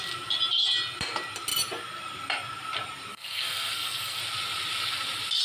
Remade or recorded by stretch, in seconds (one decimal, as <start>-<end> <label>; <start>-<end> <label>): 0.0-3.1 recorded; 3.1-4.2 remade; 4.2-5.4 recorded